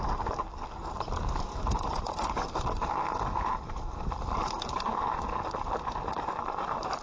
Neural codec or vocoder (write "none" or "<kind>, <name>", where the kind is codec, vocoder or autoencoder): none